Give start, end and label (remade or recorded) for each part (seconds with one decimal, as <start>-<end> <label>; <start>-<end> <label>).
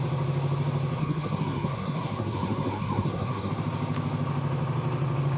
0.0-1.0 recorded; 1.0-3.5 remade; 3.5-5.4 recorded